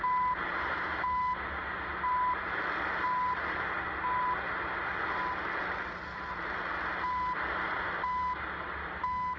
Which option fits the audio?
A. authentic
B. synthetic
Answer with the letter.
A